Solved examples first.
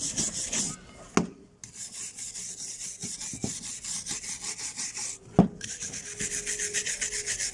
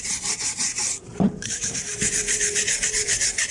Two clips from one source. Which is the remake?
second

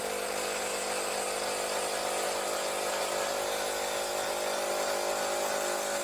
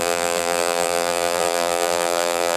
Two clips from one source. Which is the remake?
second